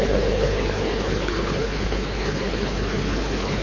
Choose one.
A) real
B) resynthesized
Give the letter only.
B